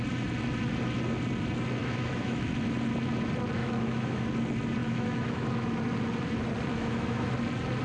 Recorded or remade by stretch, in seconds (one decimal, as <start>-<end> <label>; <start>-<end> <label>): 0.0-1.8 recorded; 1.8-2.5 remade; 2.5-3.6 recorded; 3.6-4.2 remade; 4.2-4.8 recorded; 4.8-5.5 remade; 5.5-6.7 recorded; 6.7-7.3 remade; 7.3-7.8 recorded